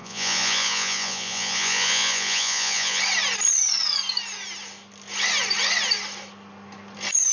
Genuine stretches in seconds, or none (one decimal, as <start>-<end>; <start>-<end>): 3.0-7.3